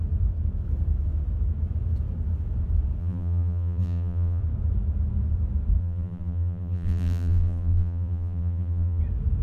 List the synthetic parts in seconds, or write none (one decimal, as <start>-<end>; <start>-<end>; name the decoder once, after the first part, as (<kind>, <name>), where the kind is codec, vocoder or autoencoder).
3.0-4.4 (vocoder, BigVGAN v2); 5.8-9.0